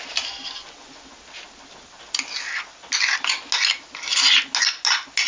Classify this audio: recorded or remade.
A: recorded